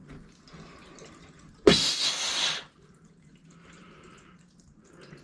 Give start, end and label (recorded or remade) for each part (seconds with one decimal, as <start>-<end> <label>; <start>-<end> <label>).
0.0-2.2 recorded; 2.2-5.2 remade